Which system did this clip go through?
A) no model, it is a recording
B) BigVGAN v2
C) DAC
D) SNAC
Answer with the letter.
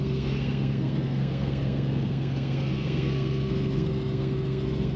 D